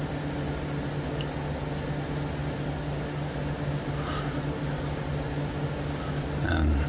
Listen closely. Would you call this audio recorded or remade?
recorded